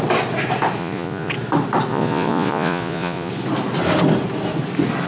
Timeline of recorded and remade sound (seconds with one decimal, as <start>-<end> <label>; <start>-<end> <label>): 0.0-0.8 recorded; 0.8-1.3 remade; 1.3-1.9 recorded; 1.9-3.3 remade; 3.3-5.1 recorded